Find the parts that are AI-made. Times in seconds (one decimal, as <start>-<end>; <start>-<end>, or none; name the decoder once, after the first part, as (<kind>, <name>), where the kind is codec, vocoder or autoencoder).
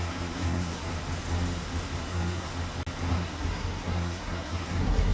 0.0-0.9 (codec, SNAC); 2.0-2.5; 3.1-5.1